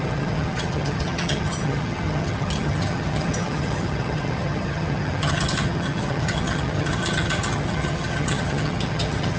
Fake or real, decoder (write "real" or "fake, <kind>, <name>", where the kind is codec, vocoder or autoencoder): fake, vocoder, HiFi-GAN